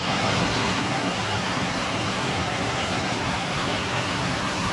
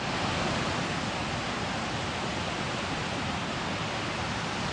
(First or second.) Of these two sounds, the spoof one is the first